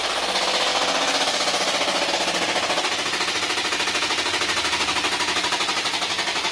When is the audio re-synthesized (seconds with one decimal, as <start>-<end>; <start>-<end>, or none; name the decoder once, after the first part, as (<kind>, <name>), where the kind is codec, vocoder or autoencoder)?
none